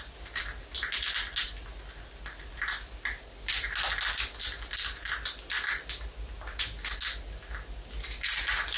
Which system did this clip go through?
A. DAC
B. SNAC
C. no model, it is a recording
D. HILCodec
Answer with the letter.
C